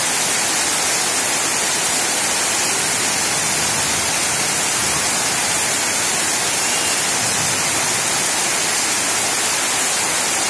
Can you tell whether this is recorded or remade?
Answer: recorded